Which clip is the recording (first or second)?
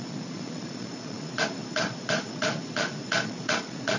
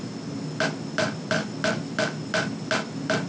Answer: second